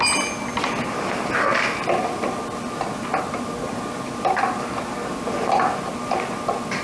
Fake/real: real